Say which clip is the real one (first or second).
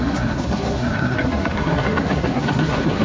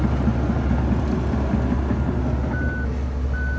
second